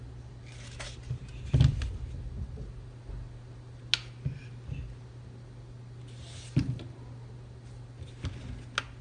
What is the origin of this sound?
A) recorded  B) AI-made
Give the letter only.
A